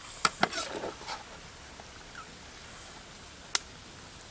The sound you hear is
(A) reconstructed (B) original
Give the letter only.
B